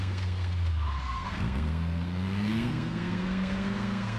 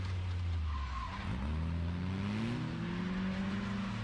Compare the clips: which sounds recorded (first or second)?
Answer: second